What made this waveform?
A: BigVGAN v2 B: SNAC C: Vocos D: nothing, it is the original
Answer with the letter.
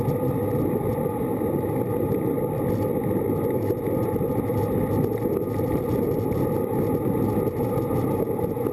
D